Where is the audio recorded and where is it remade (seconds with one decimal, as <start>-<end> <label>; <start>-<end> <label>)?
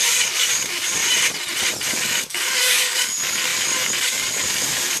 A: 0.0-1.0 remade; 1.0-1.9 recorded; 1.9-5.0 remade